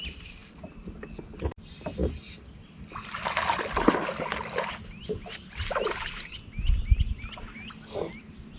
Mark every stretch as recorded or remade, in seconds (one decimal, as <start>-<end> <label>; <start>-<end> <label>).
0.0-8.6 recorded